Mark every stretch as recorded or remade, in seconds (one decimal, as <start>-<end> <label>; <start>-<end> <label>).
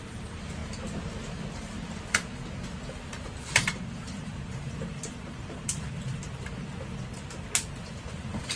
0.0-0.6 remade; 0.6-3.4 recorded; 3.4-5.9 remade; 5.9-7.8 recorded; 7.8-8.6 remade